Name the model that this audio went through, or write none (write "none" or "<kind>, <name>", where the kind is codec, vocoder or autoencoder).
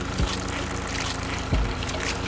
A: none